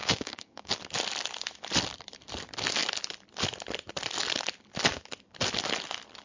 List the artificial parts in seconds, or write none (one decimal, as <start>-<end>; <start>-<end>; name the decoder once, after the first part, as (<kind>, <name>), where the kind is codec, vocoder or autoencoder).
0.0-0.7 (codec, DAC)